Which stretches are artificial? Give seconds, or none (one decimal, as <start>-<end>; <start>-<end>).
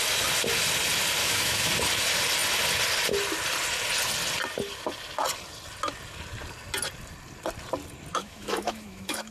1.2-1.7; 8.1-9.3